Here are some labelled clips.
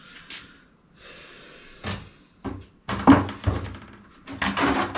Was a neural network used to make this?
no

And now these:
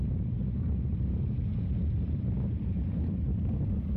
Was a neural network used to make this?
no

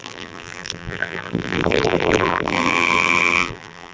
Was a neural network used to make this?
yes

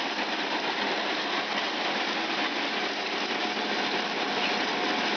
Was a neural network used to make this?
no